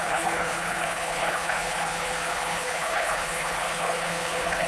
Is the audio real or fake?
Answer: fake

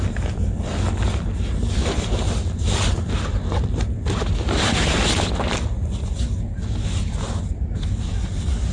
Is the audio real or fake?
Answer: real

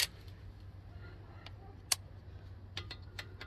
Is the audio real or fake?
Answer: real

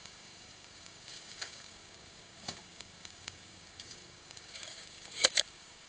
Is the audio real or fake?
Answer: fake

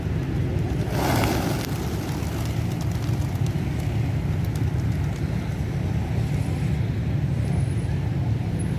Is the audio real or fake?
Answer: real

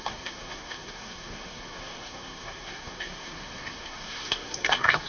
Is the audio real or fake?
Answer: fake